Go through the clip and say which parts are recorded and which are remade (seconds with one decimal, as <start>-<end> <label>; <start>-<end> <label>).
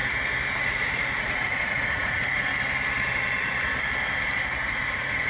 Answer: 0.0-0.6 recorded; 0.6-2.5 remade; 2.5-4.7 recorded; 4.7-5.3 remade